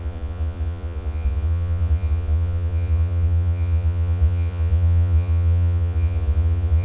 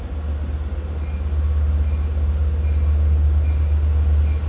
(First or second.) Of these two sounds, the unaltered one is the second